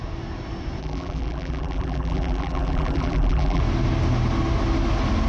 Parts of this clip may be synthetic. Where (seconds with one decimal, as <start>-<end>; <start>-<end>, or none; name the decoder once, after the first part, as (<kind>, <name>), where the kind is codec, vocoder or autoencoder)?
0.8-3.6 (vocoder, BigVGAN v2)